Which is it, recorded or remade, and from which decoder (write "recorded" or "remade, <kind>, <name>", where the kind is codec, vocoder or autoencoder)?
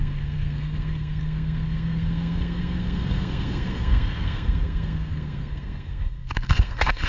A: remade, codec, SNAC